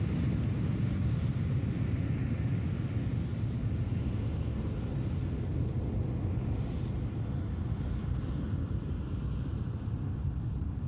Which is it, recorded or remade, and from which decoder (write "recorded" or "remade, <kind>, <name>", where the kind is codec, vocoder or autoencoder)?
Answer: recorded